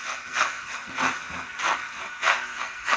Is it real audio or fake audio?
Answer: fake